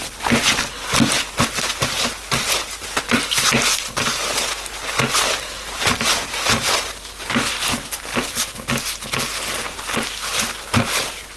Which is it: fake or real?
real